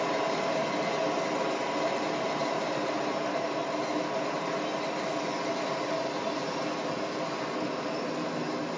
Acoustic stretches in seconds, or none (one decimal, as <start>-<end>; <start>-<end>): 0.0-8.8